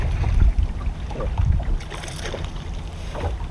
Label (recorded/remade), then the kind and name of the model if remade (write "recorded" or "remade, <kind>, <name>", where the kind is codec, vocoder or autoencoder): recorded